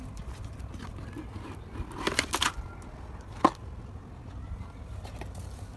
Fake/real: real